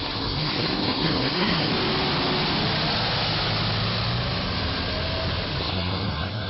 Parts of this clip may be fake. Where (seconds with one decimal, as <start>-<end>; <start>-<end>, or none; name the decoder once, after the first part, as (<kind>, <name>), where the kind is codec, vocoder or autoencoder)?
0.0-1.7 (codec, SNAC); 5.6-6.5